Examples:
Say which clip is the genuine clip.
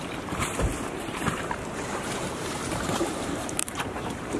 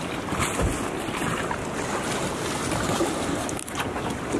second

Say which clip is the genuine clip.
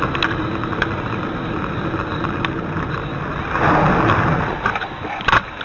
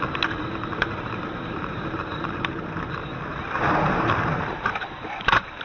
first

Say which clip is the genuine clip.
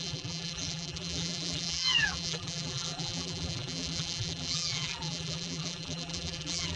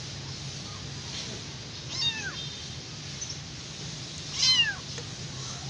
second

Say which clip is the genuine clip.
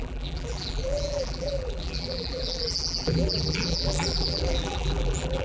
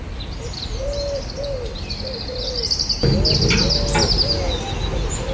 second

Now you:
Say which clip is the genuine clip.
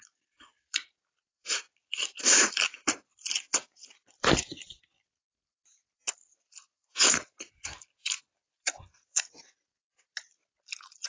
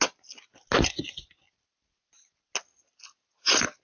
second